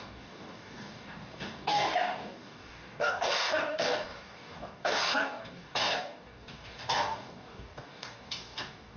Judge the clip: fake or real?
fake